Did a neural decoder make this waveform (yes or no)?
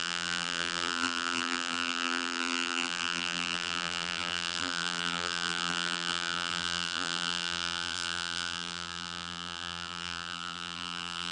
yes